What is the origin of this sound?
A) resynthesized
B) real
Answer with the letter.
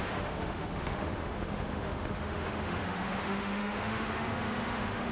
A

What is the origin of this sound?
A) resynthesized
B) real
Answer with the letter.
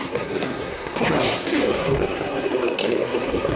A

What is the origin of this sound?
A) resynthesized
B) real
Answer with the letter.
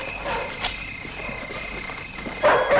B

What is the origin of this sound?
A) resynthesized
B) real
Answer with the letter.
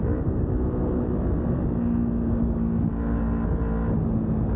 B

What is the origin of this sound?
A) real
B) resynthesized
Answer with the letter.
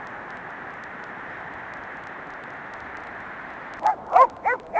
A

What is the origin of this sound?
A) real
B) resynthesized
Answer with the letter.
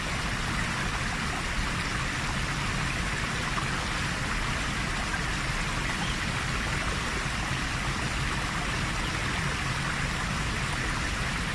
A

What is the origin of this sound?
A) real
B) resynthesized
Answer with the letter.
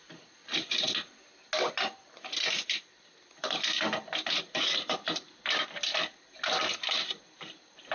A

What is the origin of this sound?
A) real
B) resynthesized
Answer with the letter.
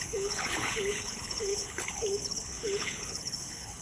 B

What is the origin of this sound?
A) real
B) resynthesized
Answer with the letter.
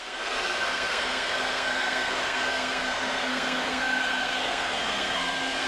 B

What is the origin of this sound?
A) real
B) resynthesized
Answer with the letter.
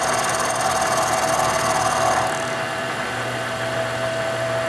A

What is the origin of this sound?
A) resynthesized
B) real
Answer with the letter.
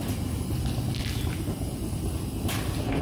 B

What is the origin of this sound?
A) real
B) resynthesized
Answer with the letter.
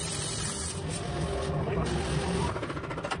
A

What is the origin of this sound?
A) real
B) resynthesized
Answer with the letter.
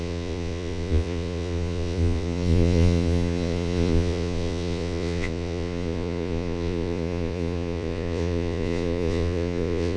B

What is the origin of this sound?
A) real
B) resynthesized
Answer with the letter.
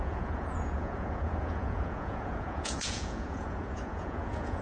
B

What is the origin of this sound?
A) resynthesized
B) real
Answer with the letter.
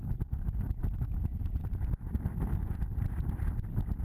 A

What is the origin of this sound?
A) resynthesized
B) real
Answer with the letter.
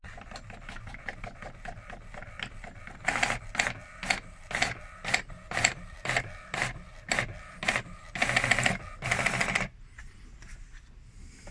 B